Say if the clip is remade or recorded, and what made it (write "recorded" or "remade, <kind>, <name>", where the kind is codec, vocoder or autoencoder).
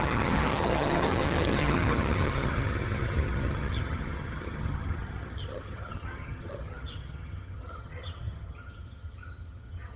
remade, vocoder, HiFi-GAN